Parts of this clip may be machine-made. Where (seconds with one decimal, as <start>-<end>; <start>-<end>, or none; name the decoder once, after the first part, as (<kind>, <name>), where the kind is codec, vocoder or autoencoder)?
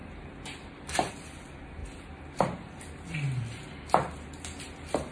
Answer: 0.0-1.1 (vocoder, BigVGAN v2)